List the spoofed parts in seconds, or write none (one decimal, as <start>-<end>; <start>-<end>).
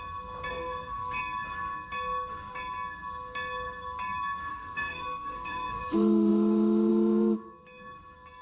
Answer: 0.5-1.2; 4.5-5.8